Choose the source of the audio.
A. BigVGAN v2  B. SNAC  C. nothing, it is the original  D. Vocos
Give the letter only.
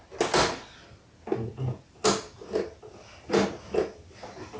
C